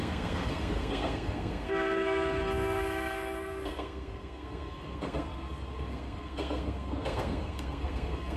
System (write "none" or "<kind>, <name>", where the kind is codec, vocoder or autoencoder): codec, SNAC